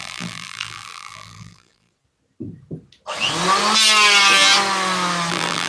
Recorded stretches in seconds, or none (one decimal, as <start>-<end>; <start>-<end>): 1.9-5.3